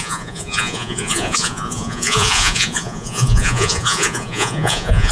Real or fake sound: fake